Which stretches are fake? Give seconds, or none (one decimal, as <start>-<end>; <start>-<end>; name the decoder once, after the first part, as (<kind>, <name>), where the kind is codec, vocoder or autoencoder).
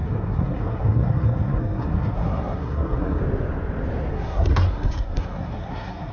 0.0-3.2 (codec, SNAC); 4.1-6.1